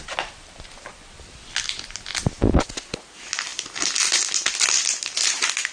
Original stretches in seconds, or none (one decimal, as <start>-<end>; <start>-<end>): 0.0-5.7